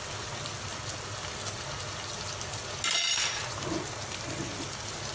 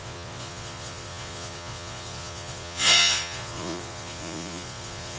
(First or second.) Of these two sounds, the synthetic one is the second